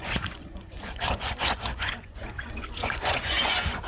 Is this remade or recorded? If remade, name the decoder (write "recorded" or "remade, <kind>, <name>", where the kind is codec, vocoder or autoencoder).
remade, vocoder, Vocos